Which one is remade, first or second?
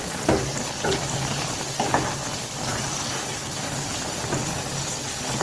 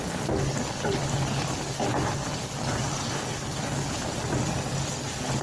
first